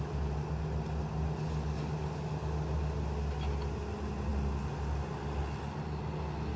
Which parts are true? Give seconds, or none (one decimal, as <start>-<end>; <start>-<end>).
0.0-6.6